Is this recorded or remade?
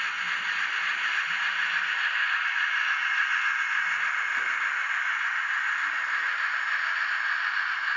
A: recorded